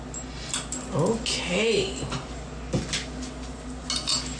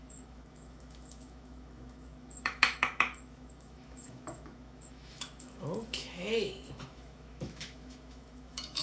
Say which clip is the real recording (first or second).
first